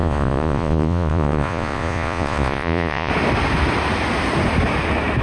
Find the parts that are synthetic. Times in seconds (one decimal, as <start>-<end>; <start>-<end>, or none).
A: 0.0-3.1